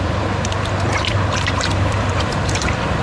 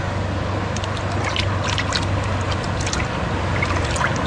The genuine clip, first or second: second